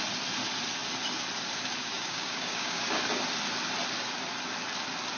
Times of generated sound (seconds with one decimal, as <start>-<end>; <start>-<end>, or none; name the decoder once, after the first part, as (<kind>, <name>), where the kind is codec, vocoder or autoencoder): 1.8-3.0 (codec, DAC)